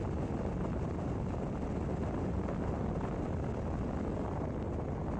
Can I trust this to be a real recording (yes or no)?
yes